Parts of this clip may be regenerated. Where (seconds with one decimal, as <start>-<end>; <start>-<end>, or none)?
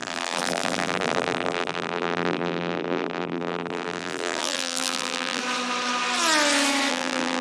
0.0-5.4; 6.9-7.4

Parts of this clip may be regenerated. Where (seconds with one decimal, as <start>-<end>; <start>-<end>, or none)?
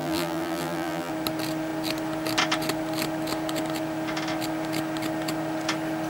0.0-1.1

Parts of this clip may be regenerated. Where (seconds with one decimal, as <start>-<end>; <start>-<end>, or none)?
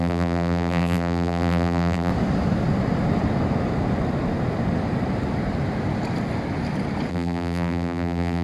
0.0-2.1; 7.1-8.4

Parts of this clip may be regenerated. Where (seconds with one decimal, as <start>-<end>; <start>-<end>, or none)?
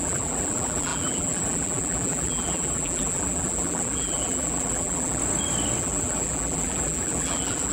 0.0-5.2; 5.8-7.7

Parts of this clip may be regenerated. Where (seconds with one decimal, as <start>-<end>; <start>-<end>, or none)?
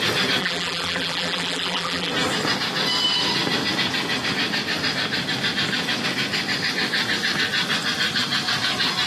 0.4-2.1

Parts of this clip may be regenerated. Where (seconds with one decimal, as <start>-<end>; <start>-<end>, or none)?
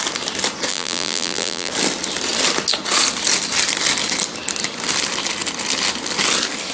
0.7-1.7